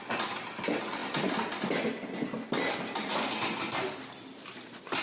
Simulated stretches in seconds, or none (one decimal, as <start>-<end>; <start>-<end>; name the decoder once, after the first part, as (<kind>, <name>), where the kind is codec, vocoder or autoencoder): none